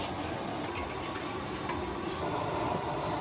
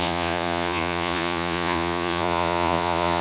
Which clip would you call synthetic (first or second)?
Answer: second